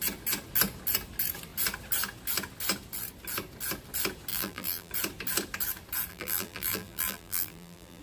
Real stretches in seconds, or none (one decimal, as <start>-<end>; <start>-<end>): 0.0-4.3; 4.9-6.1